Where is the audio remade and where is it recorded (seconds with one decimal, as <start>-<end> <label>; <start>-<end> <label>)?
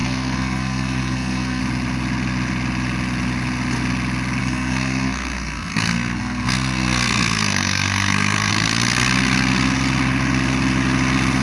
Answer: 0.0-1.6 remade; 1.6-4.4 recorded; 4.4-8.5 remade; 8.5-11.4 recorded